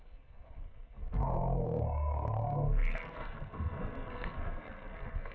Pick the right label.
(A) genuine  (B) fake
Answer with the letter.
B